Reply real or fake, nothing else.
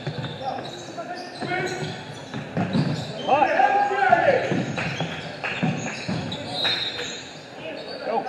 real